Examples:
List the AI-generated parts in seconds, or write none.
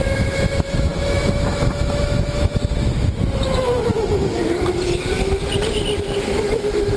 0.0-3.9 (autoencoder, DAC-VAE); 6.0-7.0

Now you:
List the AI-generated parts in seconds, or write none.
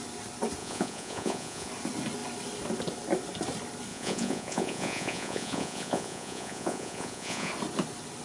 0.6-1.7 (vocoder, Vocos); 3.9-7.5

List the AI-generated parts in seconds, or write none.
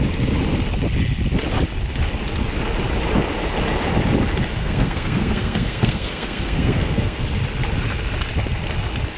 4.6-7.2 (codec, SNAC)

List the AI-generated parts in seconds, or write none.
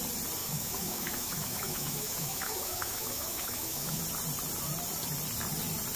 0.4-4.0 (autoencoder, DAC-VAE)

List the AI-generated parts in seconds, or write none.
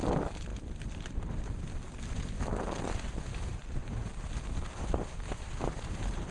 none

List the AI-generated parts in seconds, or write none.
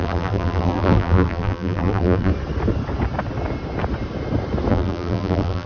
0.0-2.3 (vocoder, BigVGAN v2); 4.7-5.7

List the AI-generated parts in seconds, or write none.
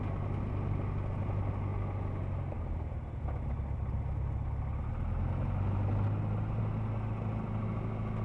none